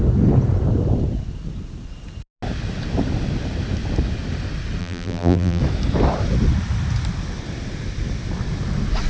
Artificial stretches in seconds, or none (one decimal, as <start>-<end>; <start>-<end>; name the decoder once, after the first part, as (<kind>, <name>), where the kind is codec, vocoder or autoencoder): 4.8-5.6 (vocoder, BigVGAN v2)